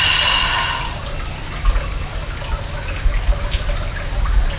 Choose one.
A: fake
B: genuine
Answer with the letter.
B